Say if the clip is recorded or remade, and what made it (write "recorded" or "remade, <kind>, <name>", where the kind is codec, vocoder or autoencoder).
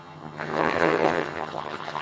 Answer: remade, vocoder, HiFi-GAN